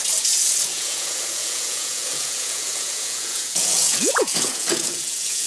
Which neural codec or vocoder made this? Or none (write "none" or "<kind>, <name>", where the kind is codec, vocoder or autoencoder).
vocoder, Vocos